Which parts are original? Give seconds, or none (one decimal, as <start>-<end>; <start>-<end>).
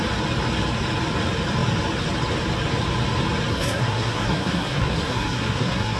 0.0-3.5